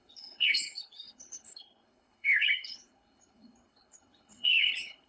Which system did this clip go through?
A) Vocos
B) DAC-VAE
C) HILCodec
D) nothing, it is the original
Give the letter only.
C